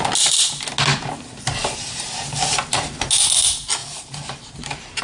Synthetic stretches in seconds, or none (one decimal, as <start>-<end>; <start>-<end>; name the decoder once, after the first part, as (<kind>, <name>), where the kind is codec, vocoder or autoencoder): 0.9-3.1 (vocoder, BigVGAN v2); 3.8-5.0